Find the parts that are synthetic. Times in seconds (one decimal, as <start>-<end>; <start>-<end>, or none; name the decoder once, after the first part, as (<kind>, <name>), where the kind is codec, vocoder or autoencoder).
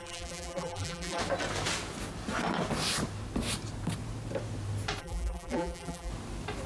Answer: 0.0-1.2 (vocoder, BigVGAN v2); 5.0-6.1